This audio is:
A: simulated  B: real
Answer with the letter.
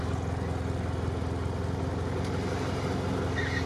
B